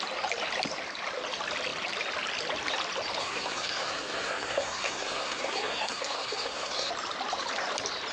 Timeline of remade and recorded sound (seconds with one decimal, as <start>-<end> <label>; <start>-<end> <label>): 0.0-3.2 recorded; 3.2-6.9 remade; 6.9-8.1 recorded